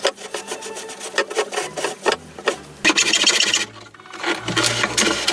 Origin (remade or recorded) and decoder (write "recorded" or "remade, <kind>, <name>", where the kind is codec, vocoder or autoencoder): recorded